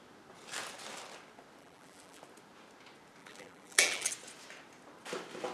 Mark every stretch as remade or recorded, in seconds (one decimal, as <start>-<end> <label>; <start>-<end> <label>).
0.0-1.6 recorded; 1.6-2.2 remade; 2.2-3.2 recorded; 3.2-4.1 remade; 4.1-5.5 recorded